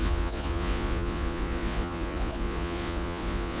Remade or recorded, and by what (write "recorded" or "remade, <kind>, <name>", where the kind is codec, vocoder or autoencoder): remade, vocoder, Vocos